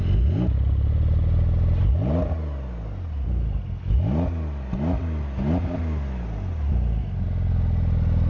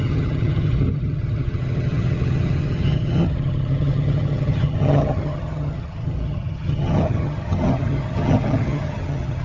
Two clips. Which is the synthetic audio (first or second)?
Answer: second